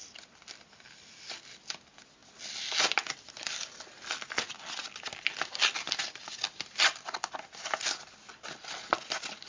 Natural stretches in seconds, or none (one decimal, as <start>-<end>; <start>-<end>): 0.0-9.5

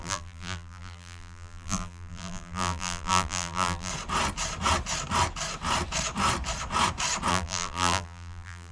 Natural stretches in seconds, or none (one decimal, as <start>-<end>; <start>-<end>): 3.9-7.3

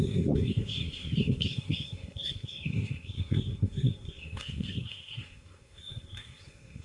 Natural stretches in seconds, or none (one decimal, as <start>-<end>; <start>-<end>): none

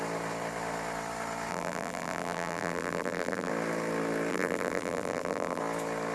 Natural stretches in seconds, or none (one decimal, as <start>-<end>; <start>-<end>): 0.0-1.5; 3.5-4.3; 5.6-6.1

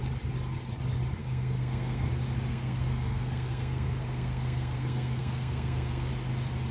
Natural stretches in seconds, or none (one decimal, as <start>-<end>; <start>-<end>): 0.0-1.2; 2.1-2.5; 6.1-6.7

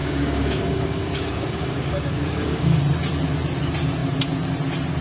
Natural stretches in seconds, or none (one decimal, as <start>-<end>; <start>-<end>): 2.8-5.0

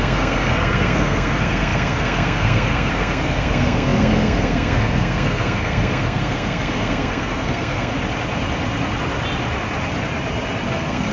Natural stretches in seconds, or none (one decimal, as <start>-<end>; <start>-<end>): 7.9-10.7